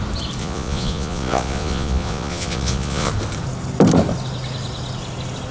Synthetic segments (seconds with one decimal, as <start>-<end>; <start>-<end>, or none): 0.4-3.1